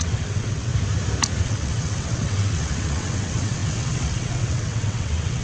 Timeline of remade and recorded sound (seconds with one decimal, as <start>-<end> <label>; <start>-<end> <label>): 0.0-0.7 remade; 0.7-1.4 recorded; 1.4-5.4 remade